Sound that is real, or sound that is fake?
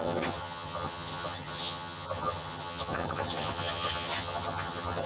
fake